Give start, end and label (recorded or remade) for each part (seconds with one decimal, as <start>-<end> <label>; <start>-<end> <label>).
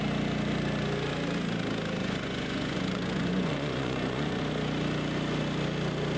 0.0-2.0 recorded; 2.0-4.4 remade; 4.4-6.2 recorded